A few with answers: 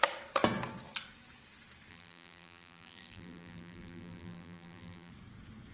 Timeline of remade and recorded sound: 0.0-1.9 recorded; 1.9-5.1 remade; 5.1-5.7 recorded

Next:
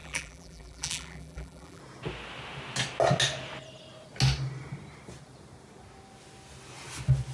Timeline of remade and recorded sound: 0.0-1.8 remade; 1.8-7.3 recorded

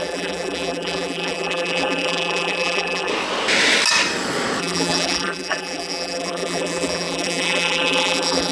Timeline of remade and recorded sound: 0.0-3.1 remade; 3.1-4.6 recorded; 4.6-8.5 remade